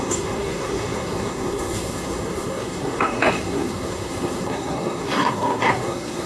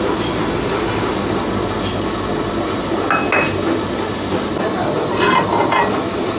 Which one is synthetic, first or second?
first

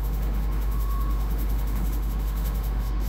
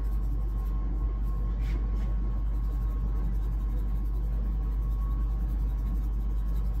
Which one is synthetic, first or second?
first